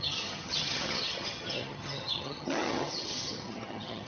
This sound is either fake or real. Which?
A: fake